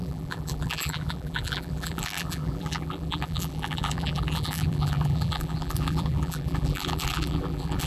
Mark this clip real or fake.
fake